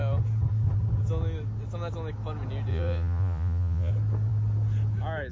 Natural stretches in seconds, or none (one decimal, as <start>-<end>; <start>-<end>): 0.0-2.7; 3.9-5.3